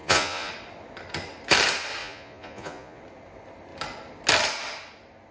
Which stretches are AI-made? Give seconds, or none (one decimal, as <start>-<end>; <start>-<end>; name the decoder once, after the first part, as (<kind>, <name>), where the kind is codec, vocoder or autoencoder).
0.0-0.5 (vocoder, Vocos); 2.0-3.0